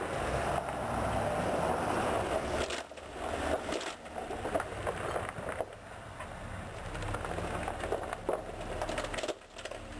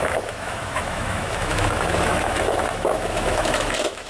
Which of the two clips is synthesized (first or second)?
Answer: second